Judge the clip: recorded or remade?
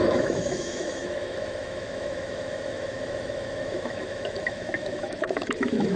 remade